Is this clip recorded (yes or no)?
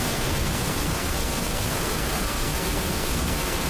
no